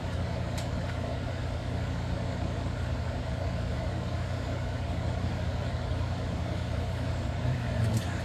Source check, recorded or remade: remade